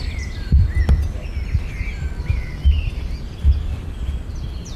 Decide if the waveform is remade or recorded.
recorded